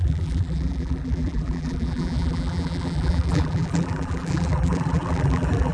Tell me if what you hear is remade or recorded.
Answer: remade